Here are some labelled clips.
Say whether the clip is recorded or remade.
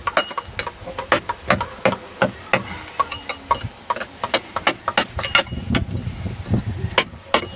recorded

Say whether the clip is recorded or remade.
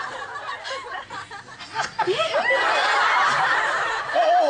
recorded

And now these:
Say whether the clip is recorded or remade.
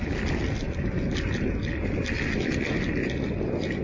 recorded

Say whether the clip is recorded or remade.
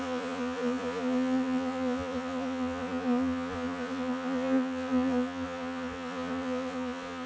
remade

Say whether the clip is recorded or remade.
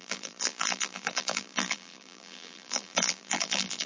remade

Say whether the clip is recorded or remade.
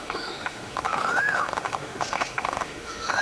remade